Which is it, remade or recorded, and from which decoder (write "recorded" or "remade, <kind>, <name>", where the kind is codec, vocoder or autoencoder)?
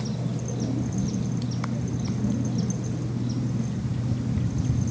recorded